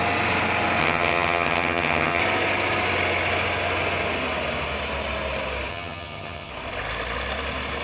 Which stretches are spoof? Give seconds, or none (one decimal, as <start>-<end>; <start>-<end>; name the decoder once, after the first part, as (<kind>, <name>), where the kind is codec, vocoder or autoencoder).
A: 0.8-2.2 (vocoder, HiFi-GAN); 5.7-6.5